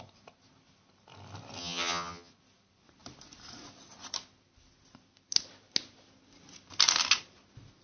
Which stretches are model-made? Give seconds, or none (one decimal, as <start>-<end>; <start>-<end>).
1.6-2.3